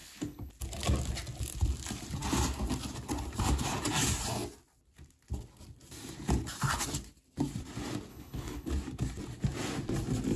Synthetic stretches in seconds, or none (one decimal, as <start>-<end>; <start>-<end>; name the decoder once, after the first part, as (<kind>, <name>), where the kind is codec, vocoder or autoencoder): 0.0-0.5 (codec, HILCodec); 8.1-8.7